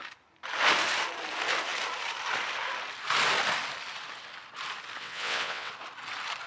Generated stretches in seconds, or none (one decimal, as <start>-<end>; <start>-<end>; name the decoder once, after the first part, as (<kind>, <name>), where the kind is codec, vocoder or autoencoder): 5.0-5.7 (vocoder, WaveNeXt)